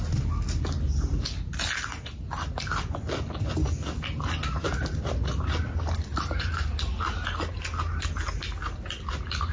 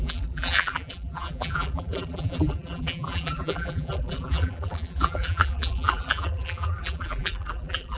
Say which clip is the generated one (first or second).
second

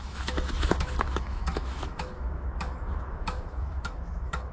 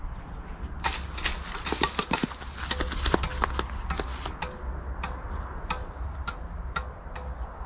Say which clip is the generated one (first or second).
first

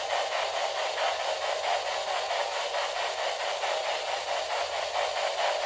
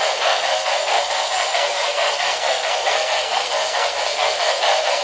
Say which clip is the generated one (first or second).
second